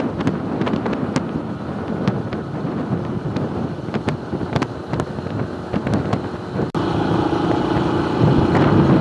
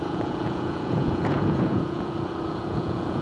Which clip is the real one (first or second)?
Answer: first